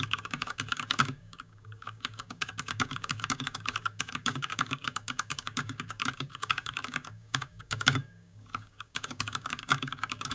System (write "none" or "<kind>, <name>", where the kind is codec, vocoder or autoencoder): codec, DAC